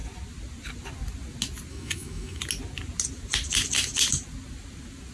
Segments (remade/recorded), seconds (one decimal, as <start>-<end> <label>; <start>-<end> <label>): 0.0-1.7 recorded; 1.7-2.4 remade; 2.4-5.1 recorded